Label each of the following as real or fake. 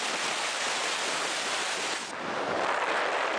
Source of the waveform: real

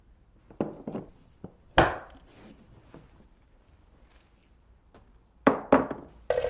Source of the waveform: real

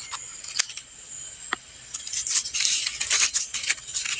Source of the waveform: real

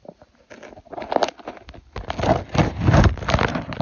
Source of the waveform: real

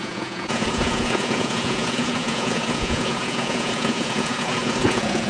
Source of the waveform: fake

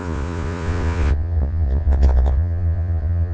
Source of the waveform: fake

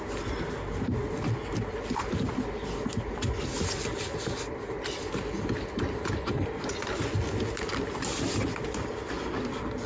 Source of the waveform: real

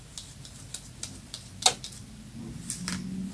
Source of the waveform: real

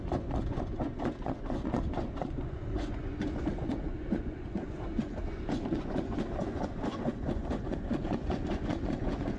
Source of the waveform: fake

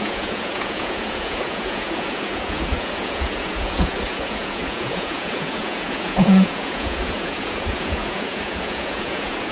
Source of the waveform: fake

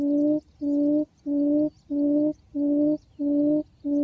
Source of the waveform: real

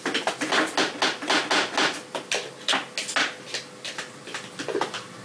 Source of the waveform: real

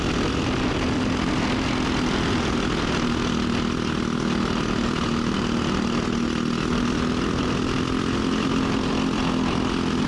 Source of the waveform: real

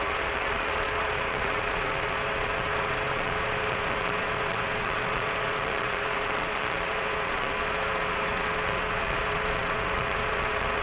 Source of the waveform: fake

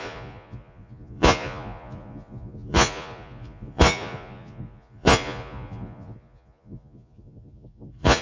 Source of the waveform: fake